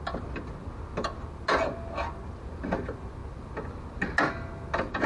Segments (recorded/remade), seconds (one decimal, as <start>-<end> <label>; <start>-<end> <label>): 0.0-5.1 recorded